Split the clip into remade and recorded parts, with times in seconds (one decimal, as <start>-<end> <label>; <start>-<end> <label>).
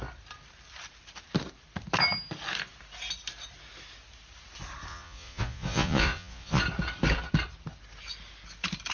0.0-4.9 recorded; 4.9-6.6 remade; 6.6-8.9 recorded